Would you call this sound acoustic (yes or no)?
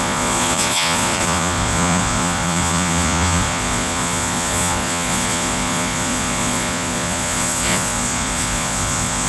no